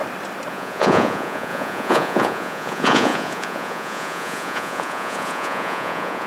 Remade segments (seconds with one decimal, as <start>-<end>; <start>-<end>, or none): 0.5-6.3